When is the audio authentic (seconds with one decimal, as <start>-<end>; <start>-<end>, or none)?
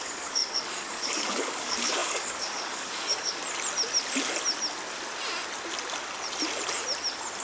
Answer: 3.4-7.4